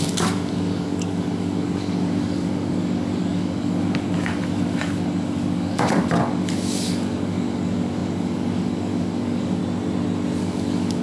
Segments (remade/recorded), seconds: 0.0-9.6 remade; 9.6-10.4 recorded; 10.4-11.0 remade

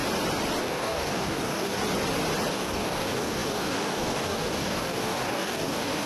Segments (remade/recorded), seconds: 0.0-0.6 recorded; 0.6-1.8 remade; 1.8-2.5 recorded; 2.5-6.1 remade

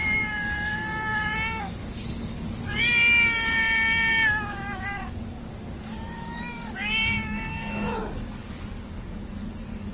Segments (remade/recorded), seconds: 0.0-9.9 remade

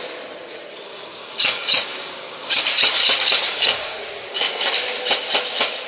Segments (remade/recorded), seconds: 0.0-0.9 recorded; 0.9-2.6 remade; 2.6-3.0 recorded; 3.0-4.7 remade; 4.7-5.9 recorded

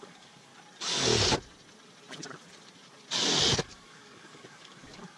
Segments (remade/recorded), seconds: 0.0-0.5 remade; 0.5-3.6 recorded; 3.6-5.2 remade

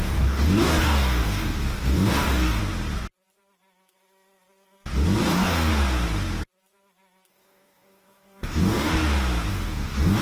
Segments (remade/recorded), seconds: 0.0-2.6 remade; 2.6-5.3 recorded; 5.3-5.7 remade; 5.7-7.3 recorded; 7.3-8.9 remade; 8.9-9.5 recorded; 9.5-10.2 remade

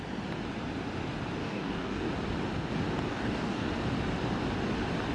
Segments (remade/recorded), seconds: 0.0-1.4 recorded; 1.4-2.1 remade; 2.1-3.1 recorded; 3.1-3.7 remade; 3.7-5.1 recorded